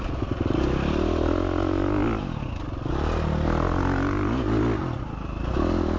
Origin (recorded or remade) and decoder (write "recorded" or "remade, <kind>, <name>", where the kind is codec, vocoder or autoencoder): recorded